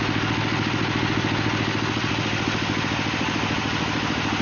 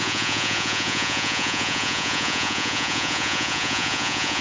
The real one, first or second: first